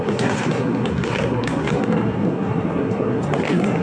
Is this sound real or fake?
fake